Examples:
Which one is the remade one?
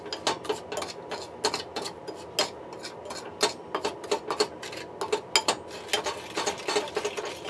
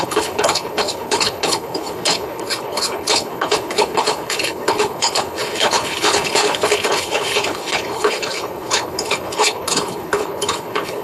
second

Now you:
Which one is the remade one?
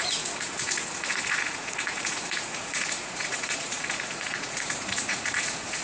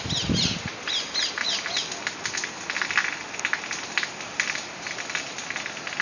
first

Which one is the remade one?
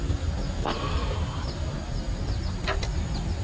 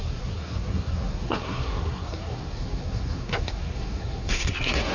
second